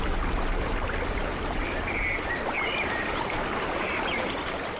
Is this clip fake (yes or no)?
yes